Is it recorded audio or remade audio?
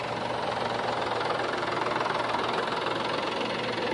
recorded